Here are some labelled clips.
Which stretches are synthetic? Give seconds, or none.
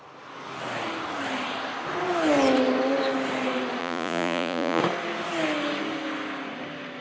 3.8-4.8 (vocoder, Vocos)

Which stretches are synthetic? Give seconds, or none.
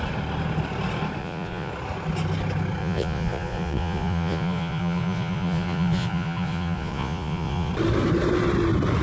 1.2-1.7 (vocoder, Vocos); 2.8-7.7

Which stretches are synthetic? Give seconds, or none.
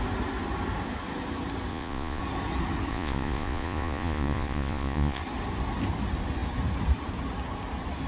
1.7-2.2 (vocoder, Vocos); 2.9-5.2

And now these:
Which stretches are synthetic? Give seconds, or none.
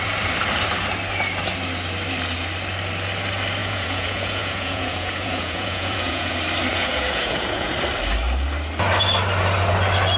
3.6-6.3 (vocoder, Vocos); 6.7-7.7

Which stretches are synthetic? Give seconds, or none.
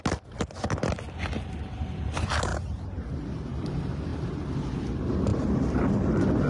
none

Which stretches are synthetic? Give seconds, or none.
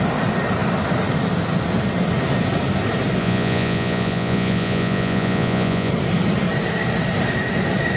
3.2-5.9 (vocoder, Vocos)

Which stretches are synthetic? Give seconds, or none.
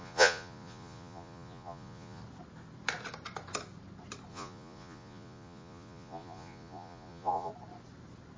0.0-2.2 (vocoder, Vocos); 4.3-7.5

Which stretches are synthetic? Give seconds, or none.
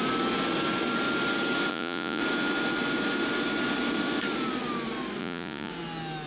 1.7-2.2 (vocoder, Vocos); 5.2-5.7